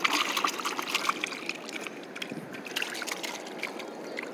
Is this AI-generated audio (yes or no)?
no